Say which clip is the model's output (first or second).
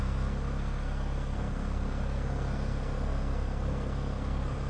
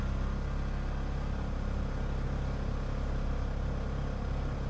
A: first